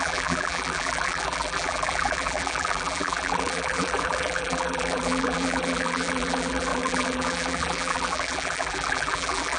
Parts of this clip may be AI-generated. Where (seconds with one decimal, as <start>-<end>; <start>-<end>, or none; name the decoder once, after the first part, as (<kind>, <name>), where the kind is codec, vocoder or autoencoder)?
0.0-9.6 (vocoder, BigVGAN v2)